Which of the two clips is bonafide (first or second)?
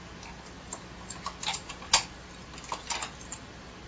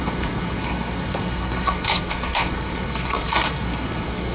first